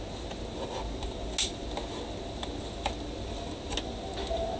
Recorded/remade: recorded